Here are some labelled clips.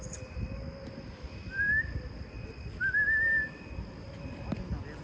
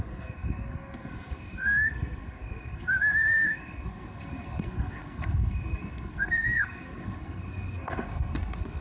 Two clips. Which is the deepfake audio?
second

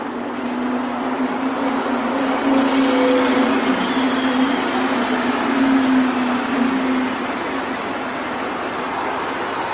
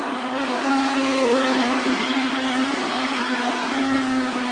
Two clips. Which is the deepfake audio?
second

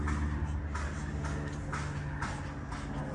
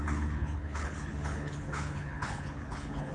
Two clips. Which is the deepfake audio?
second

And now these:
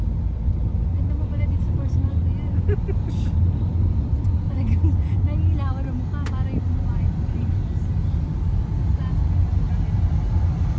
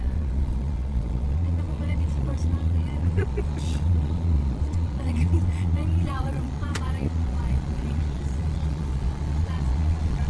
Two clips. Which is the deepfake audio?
second